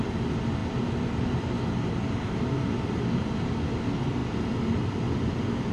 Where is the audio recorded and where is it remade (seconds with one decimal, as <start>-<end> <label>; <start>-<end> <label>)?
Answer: 0.0-5.7 recorded